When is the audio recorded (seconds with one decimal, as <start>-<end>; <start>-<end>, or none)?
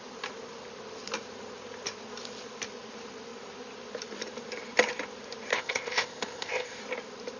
0.0-5.5; 6.8-7.4